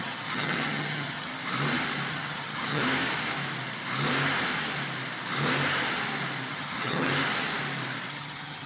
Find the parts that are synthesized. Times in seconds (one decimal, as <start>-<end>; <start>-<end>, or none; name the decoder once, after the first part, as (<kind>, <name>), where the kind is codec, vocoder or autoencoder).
0.0-1.3 (vocoder, HiFi-GAN); 2.1-2.8; 6.5-7.1; 8.1-8.7